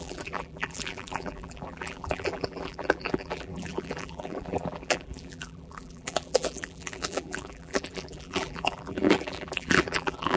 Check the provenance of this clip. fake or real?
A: fake